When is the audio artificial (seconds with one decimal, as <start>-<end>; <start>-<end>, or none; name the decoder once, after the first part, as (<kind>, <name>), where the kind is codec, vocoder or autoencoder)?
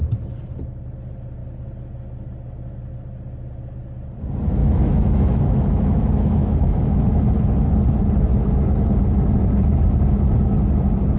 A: 4.6-7.1 (autoencoder, DAC-VAE)